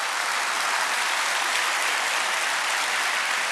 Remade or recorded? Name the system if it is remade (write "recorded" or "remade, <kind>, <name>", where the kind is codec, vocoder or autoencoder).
recorded